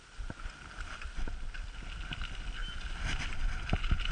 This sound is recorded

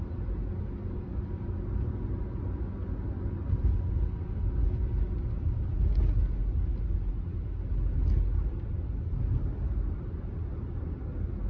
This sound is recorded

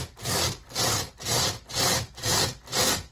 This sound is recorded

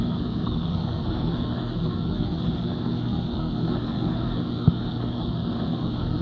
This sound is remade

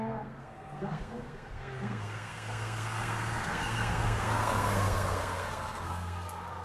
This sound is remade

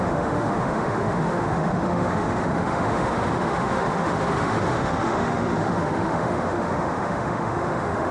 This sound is remade